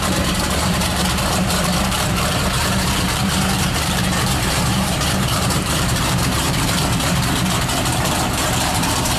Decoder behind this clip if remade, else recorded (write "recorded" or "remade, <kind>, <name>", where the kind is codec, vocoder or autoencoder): remade, vocoder, BigVGAN v2